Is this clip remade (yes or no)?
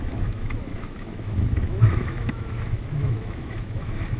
yes